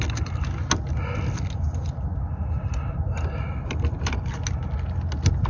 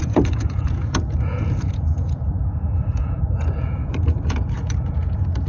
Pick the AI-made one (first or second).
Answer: second